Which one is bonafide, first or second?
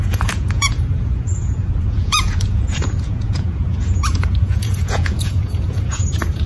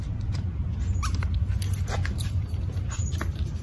second